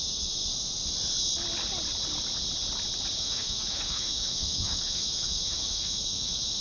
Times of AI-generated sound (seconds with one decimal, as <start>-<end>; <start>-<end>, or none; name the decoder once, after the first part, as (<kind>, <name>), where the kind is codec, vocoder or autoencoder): 0.0-0.4 (autoencoder, DAC-VAE); 3.2-6.6